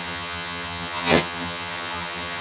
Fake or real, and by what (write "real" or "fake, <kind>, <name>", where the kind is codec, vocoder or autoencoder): fake, vocoder, HiFi-GAN